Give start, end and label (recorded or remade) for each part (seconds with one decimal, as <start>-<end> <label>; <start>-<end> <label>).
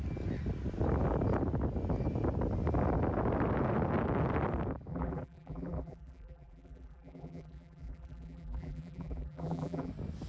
0.0-4.9 recorded; 4.9-9.9 remade; 9.9-10.3 recorded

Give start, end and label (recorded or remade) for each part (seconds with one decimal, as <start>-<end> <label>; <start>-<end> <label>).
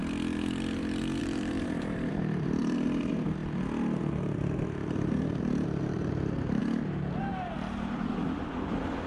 0.0-1.2 recorded; 1.2-3.4 remade; 3.4-5.1 recorded; 5.1-6.6 remade; 6.6-7.2 recorded; 7.2-9.1 remade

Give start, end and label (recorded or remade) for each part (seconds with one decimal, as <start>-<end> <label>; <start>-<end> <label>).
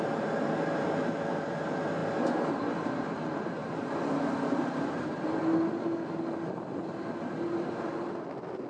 0.0-3.6 recorded; 3.6-5.4 remade; 5.4-8.7 recorded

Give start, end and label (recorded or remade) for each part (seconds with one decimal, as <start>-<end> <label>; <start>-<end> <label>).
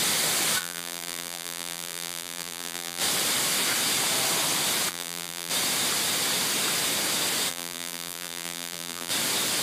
0.0-0.6 recorded; 0.6-3.0 remade; 3.0-4.9 recorded; 4.9-5.5 remade; 5.5-7.5 recorded; 7.5-9.1 remade; 9.1-9.6 recorded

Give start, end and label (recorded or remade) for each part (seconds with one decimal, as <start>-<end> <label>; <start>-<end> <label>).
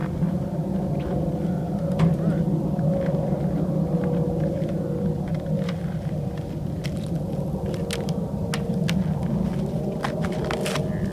0.0-11.1 recorded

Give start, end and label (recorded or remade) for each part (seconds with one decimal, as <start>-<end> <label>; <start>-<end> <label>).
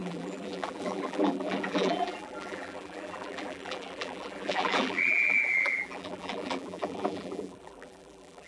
0.0-8.5 remade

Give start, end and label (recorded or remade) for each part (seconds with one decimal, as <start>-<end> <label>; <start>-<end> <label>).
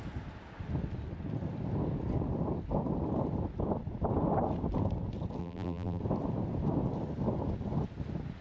0.0-5.4 recorded; 5.4-6.0 remade; 6.0-8.4 recorded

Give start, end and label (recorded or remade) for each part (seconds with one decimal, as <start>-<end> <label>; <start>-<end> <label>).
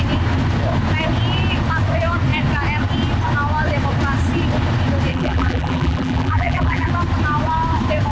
0.0-5.1 recorded; 5.1-6.9 remade; 6.9-8.1 recorded